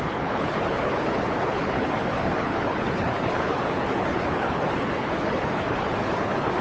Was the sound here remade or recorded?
remade